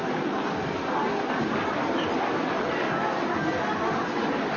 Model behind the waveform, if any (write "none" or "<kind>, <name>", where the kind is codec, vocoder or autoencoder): none